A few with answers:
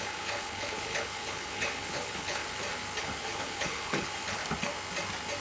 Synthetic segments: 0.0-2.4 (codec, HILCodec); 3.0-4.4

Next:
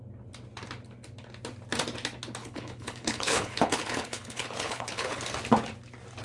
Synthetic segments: 2.4-5.2 (codec, HILCodec)

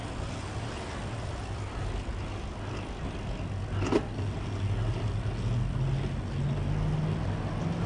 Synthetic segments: none